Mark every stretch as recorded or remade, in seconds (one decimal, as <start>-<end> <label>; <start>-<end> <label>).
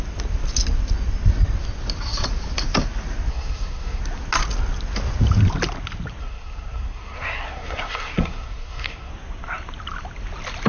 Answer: 0.0-3.3 recorded; 3.3-4.0 remade; 4.0-6.2 recorded; 6.2-9.1 remade; 9.1-10.7 recorded